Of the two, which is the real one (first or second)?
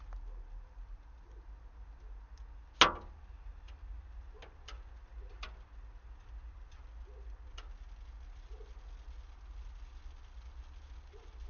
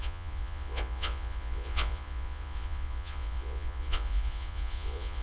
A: first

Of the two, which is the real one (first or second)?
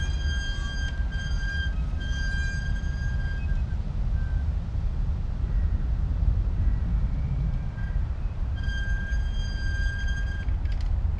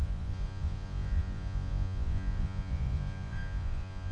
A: first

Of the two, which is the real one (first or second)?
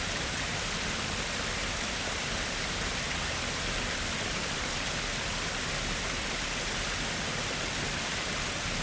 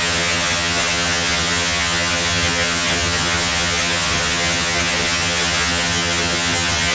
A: first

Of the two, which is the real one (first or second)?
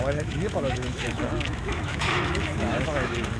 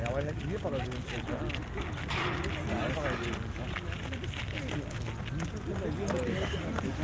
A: second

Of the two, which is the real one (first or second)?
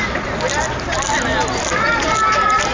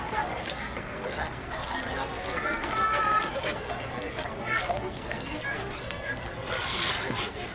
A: first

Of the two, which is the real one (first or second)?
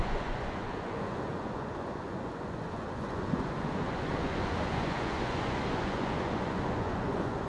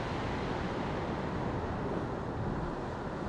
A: second